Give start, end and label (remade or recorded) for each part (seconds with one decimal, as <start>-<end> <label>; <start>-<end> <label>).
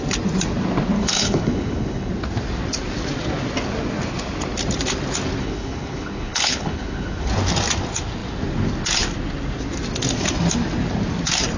0.0-1.0 recorded; 1.0-2.1 remade; 2.1-5.4 recorded; 5.4-7.3 remade; 7.3-11.6 recorded